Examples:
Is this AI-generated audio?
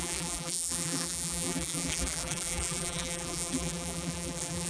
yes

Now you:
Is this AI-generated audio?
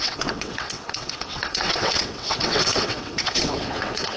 yes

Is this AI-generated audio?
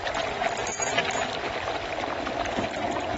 no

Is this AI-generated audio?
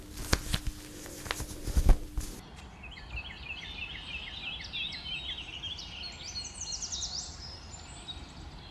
no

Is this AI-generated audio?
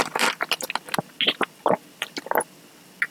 no